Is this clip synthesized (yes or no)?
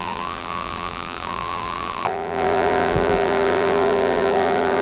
yes